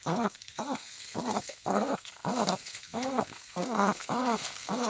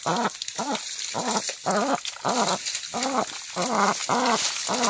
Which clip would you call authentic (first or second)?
second